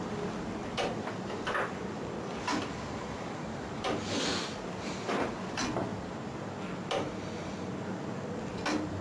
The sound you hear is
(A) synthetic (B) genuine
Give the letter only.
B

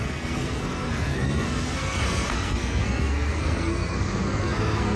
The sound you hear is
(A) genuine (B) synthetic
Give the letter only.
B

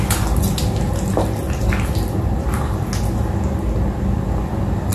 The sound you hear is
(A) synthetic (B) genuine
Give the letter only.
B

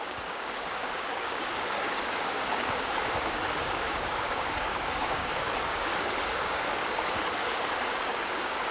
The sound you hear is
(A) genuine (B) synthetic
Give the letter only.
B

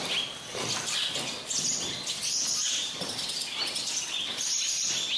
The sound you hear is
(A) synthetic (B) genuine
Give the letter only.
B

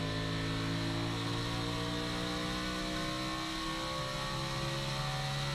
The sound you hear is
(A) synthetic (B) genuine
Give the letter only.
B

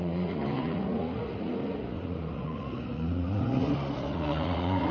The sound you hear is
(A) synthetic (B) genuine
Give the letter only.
A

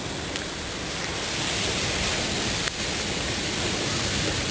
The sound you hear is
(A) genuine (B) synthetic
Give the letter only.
A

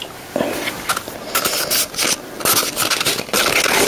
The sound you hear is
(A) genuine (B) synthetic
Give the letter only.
A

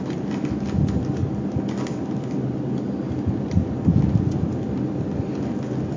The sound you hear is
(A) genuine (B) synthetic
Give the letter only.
A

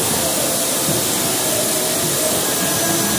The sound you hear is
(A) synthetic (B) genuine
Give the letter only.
B